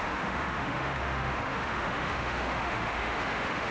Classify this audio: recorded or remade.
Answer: remade